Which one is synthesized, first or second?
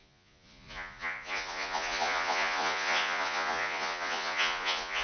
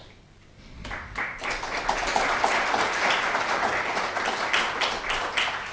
first